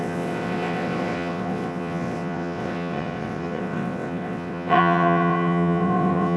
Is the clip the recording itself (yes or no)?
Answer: no